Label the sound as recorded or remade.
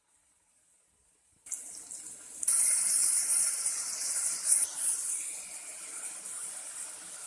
recorded